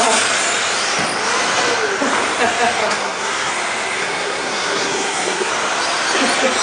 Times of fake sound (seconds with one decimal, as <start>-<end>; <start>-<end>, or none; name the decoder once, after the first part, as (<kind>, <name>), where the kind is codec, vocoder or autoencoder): 2.8-3.5 (codec, SNAC); 4.0-5.5